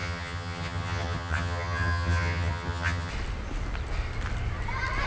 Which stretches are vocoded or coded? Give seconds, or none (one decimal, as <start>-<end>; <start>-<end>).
0.0-3.1